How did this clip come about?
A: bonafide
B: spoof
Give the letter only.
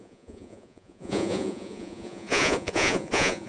B